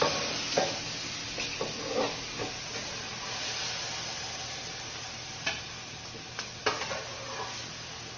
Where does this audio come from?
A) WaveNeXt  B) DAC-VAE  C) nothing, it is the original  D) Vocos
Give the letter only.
C